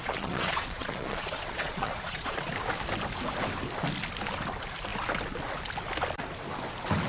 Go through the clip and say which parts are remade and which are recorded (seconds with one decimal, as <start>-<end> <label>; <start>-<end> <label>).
0.0-2.5 remade; 2.5-7.1 recorded